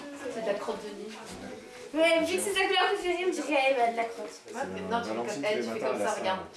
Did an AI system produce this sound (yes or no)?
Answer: no